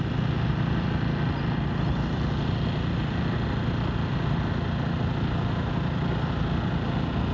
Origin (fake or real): real